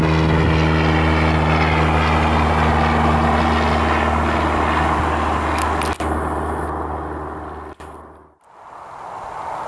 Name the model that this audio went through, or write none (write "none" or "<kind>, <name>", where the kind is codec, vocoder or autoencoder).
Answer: none